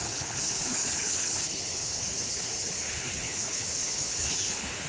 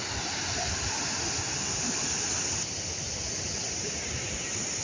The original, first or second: second